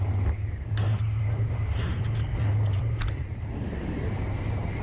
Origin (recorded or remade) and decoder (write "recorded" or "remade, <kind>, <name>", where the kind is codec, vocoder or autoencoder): recorded